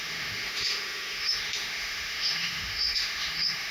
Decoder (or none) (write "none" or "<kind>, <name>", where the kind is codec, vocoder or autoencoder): autoencoder, DAC-VAE